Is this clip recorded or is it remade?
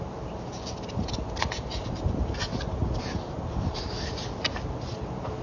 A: recorded